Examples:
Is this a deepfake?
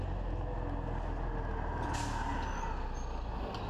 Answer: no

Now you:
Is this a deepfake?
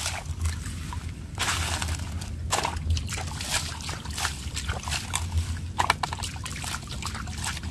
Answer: no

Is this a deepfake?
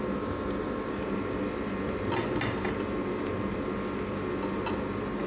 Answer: no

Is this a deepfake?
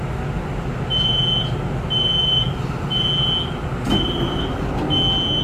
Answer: no